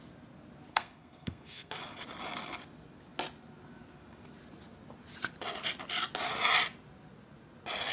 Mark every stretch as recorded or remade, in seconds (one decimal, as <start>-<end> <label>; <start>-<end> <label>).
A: 0.0-0.7 recorded; 0.7-1.7 remade; 1.7-7.9 recorded